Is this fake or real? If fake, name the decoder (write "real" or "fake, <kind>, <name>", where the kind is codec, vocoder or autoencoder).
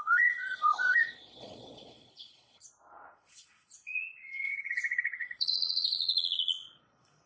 fake, vocoder, Vocos